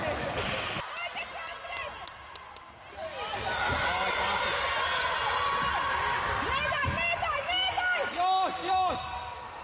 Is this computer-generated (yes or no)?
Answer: no